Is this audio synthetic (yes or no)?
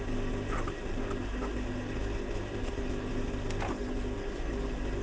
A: no